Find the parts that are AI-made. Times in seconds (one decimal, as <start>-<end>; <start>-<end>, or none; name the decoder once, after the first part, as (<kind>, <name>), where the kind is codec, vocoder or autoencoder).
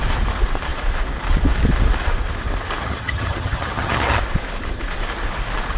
2.8-4.2 (vocoder, HiFi-GAN)